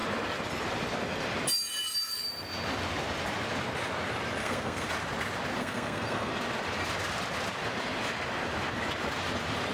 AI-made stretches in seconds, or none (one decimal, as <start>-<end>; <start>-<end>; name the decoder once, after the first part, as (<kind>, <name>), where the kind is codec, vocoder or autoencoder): 4.4-4.9 (codec, SNAC); 5.6-6.3